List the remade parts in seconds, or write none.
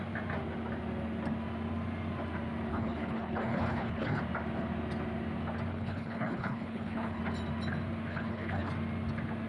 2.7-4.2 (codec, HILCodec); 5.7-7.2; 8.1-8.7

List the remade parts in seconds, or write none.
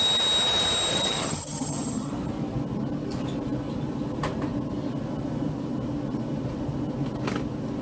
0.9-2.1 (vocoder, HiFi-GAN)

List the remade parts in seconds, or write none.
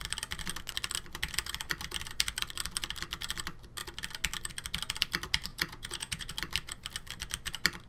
5.5-6.3 (vocoder, Vocos)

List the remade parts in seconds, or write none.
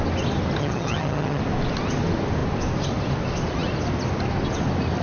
0.6-1.4 (vocoder, HiFi-GAN)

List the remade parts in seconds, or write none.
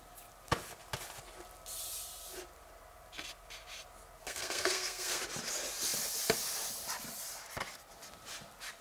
4.2-5.2 (codec, SNAC)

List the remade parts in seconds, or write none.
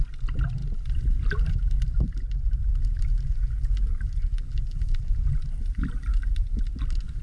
4.3-5.2 (vocoder, BigVGAN v2)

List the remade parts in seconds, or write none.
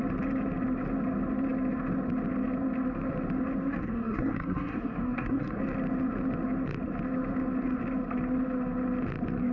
3.8-5.6 (codec, SNAC)